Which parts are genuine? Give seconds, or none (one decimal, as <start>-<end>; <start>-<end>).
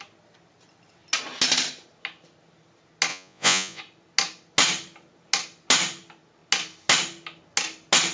0.0-3.1; 3.8-8.1